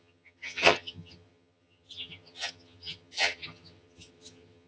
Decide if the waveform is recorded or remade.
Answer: remade